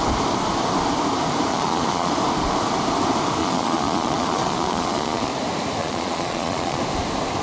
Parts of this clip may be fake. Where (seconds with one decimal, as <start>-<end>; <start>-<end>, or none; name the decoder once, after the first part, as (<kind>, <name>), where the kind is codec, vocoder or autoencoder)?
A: 1.5-2.1 (vocoder, Vocos); 3.4-5.3; 5.8-6.8